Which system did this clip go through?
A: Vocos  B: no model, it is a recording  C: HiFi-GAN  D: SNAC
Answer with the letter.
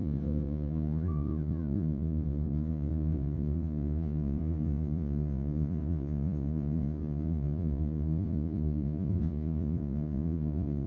A